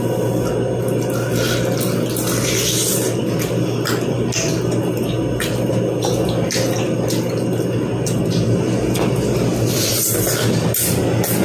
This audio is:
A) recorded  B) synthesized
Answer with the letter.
A